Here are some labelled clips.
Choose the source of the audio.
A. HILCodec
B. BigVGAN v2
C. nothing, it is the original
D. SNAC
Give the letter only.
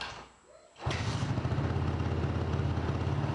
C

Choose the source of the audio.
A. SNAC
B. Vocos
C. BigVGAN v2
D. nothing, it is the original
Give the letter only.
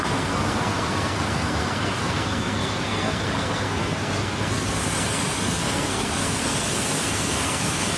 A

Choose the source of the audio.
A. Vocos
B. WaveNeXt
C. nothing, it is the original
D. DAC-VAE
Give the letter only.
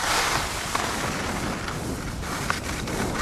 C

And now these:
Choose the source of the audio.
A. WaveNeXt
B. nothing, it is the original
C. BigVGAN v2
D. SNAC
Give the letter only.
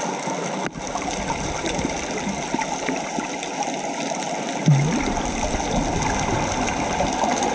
B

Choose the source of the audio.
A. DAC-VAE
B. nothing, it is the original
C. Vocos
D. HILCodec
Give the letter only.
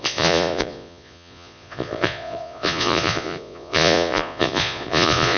C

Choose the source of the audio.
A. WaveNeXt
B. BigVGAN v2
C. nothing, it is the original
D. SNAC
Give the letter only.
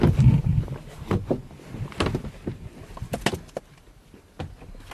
C